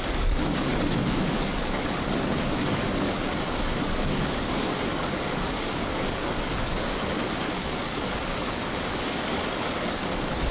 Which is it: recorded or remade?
remade